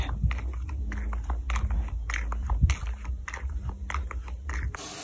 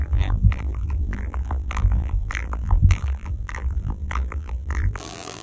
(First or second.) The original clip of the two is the first